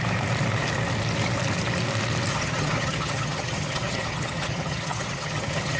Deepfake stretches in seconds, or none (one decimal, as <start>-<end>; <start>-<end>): 2.3-5.8